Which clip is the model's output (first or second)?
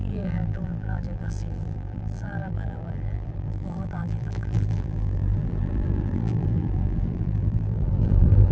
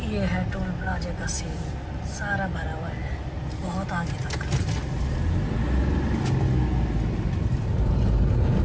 first